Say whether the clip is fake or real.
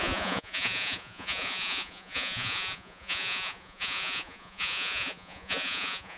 fake